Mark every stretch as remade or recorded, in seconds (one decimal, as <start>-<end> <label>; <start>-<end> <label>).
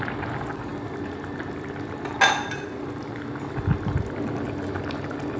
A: 0.0-5.4 recorded